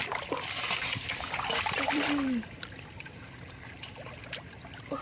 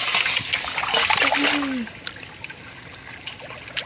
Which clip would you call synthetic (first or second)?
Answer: first